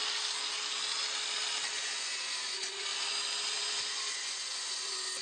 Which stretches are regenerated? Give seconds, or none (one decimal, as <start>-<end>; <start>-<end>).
1.7-2.9; 3.5-5.2